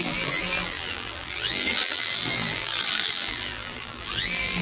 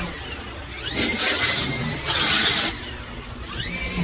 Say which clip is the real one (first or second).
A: second